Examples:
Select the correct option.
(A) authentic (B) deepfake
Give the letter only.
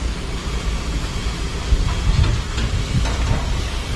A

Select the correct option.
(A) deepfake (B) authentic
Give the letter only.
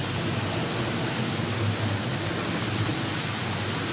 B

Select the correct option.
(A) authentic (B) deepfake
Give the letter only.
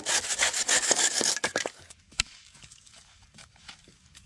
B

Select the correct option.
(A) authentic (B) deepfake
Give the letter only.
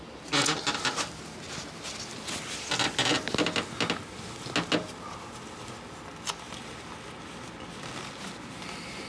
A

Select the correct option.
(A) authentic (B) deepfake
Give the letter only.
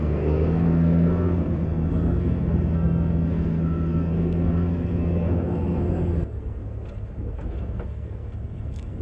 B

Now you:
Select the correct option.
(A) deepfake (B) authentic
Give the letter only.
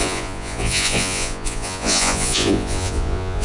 A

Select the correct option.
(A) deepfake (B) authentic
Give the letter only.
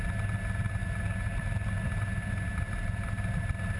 B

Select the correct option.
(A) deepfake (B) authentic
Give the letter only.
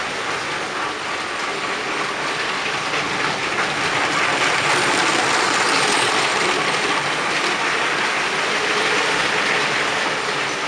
B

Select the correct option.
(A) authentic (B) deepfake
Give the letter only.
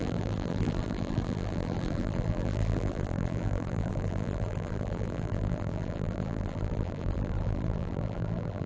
B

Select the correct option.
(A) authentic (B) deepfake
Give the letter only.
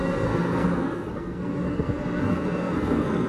B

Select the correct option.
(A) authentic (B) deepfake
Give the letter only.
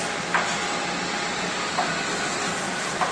A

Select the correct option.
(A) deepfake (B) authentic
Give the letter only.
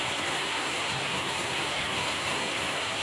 A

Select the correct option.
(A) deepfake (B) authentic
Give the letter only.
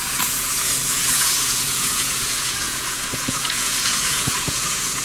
A